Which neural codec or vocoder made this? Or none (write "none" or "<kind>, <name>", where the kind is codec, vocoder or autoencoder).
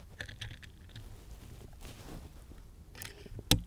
none